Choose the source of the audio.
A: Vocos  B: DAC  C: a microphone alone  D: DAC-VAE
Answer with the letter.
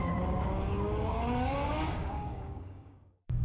B